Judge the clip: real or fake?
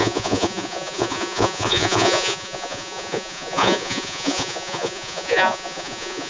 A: fake